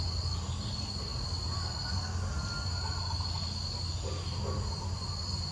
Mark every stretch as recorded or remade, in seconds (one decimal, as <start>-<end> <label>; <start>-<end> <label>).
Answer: 0.0-5.5 recorded